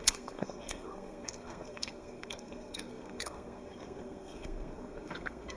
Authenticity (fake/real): fake